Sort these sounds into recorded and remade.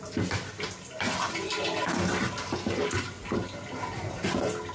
recorded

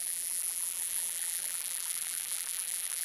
remade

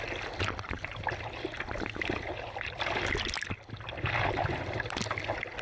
recorded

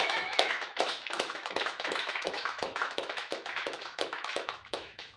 remade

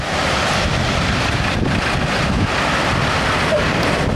recorded